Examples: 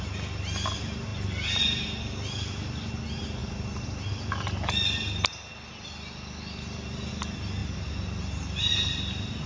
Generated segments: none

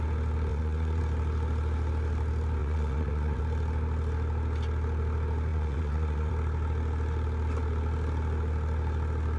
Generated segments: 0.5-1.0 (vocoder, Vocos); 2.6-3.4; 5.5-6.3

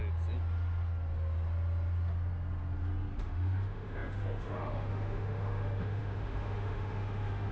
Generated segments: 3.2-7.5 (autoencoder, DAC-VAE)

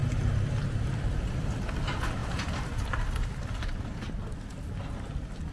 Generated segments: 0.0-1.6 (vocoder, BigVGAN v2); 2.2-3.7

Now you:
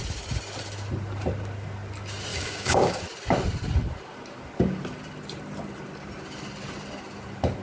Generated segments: 2.3-3.0 (codec, DAC)